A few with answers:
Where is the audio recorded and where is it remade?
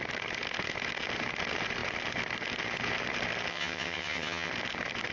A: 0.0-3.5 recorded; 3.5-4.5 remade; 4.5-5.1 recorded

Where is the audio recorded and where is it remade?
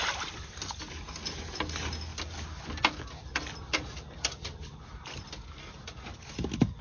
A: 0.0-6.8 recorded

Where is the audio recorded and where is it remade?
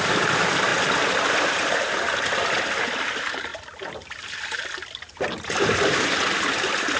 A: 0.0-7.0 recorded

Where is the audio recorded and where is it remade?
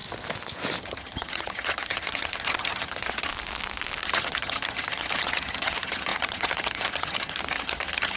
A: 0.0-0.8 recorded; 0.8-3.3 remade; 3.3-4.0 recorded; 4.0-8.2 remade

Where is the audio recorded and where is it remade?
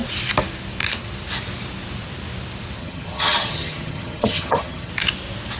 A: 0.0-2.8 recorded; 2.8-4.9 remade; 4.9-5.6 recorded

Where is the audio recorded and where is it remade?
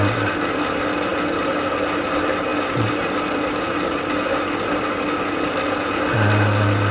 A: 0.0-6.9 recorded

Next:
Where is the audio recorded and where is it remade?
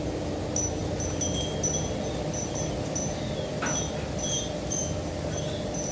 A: 0.0-5.9 recorded